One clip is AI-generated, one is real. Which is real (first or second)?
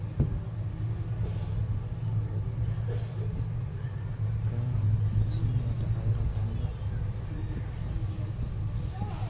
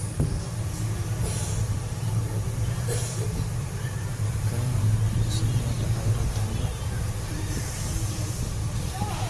first